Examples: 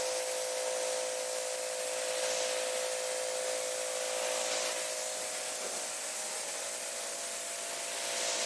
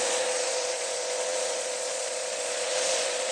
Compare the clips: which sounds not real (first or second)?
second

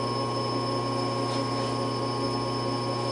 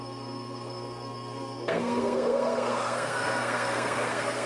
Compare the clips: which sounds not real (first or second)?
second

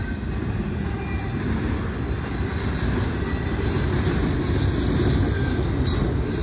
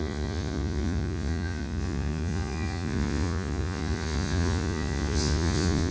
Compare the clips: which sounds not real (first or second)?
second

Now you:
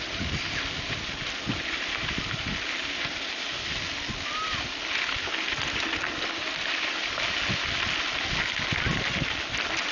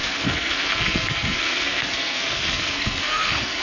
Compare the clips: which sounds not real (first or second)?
second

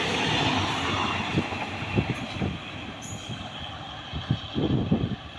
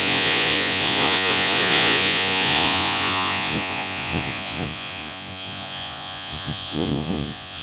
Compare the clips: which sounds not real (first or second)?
second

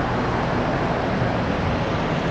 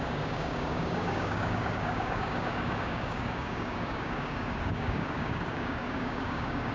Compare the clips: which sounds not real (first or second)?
second